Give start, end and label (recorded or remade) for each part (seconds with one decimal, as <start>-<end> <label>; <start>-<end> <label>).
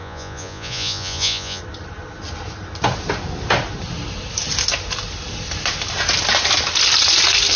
0.0-1.6 remade; 1.6-7.6 recorded